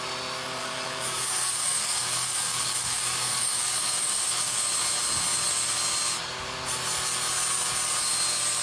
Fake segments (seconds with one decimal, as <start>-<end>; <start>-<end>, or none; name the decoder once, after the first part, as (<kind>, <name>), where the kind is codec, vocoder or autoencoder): 0.6-4.7 (codec, DAC)